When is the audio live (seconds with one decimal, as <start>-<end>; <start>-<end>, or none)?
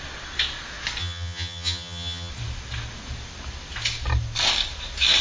0.0-1.0; 2.3-5.2